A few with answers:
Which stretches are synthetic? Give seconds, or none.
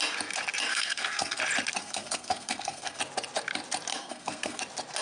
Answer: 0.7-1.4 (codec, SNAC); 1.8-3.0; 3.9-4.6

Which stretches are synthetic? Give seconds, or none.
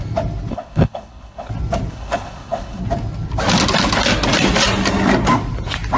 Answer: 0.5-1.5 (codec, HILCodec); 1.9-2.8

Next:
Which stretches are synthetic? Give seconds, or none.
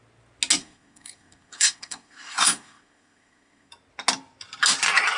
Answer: 0.6-3.7 (codec, SNAC)